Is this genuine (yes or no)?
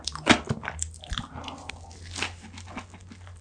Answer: yes